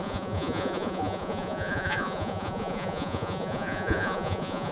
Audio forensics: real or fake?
fake